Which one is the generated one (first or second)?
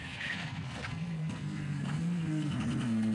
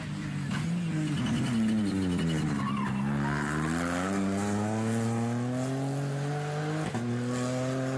first